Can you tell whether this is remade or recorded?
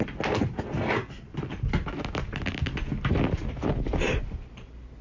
recorded